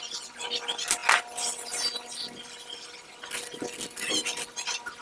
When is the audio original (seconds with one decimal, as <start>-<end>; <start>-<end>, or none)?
0.0-5.0

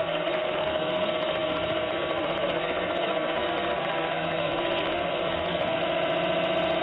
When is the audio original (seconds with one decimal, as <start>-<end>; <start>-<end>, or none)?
5.8-6.8

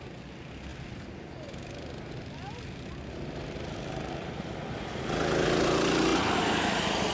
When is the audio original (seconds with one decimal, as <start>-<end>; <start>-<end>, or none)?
0.0-7.1

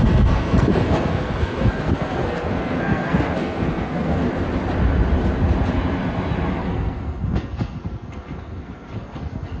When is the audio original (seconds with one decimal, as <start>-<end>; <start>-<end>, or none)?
4.2-6.5

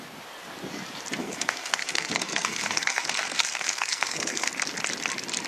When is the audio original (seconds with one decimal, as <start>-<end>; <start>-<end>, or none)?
0.0-1.2; 4.5-5.5

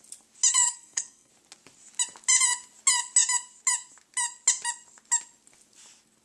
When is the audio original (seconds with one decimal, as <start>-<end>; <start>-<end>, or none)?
0.0-0.5; 1.3-6.2